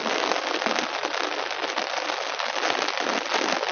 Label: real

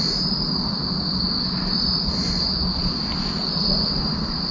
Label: real